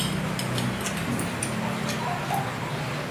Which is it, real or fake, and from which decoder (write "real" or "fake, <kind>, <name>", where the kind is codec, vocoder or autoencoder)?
real